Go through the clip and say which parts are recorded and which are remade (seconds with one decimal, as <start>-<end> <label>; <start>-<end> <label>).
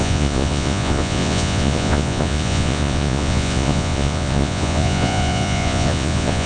0.0-6.5 remade